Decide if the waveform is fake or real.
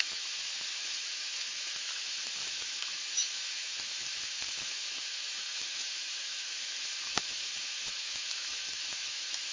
fake